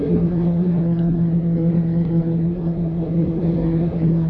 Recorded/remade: remade